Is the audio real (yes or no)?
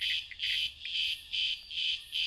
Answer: yes